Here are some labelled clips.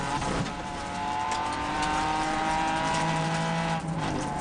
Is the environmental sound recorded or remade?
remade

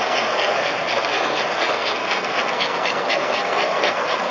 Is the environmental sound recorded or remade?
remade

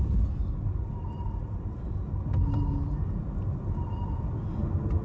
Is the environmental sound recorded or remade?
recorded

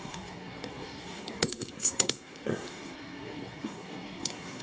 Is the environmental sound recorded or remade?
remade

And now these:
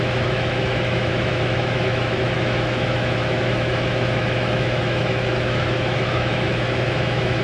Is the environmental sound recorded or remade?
remade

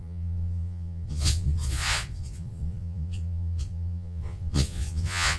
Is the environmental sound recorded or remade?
remade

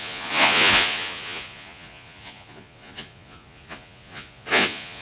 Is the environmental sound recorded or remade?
remade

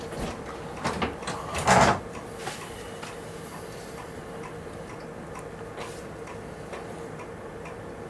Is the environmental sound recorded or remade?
recorded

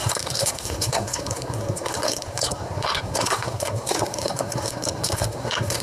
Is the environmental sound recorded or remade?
remade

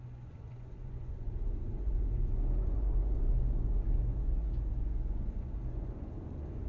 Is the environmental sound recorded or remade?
remade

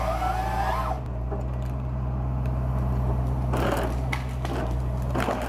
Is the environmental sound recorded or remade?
recorded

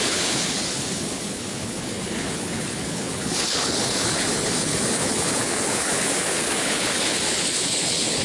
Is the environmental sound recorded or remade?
remade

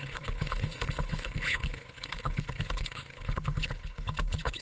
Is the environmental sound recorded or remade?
remade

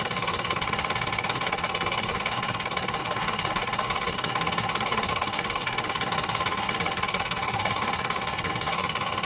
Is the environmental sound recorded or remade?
remade